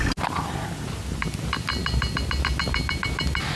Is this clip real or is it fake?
real